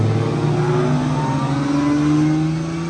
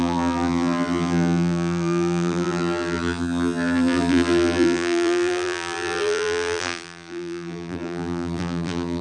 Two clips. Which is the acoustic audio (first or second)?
first